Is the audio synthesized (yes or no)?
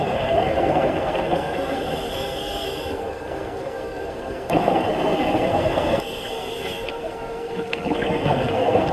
yes